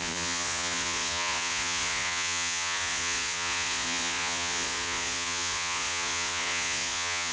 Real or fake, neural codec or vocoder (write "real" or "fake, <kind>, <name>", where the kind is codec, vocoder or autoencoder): fake, vocoder, Vocos